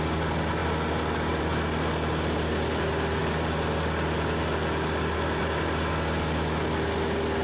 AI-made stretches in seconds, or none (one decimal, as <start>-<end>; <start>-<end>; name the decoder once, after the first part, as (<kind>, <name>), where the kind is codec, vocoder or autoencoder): none